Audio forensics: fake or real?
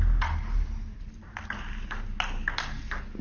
real